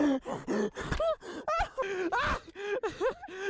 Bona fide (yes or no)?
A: yes